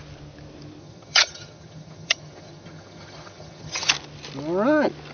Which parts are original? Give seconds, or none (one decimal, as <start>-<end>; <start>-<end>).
0.0-0.8; 3.9-5.1